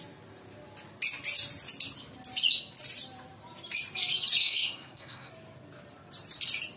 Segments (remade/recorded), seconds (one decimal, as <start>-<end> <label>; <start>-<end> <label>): 0.0-4.4 recorded; 4.4-5.3 remade; 5.3-6.8 recorded